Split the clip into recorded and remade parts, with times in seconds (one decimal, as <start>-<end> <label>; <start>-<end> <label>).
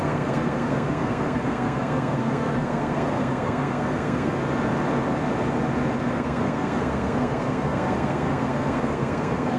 0.0-4.4 remade; 4.4-6.1 recorded; 6.1-9.6 remade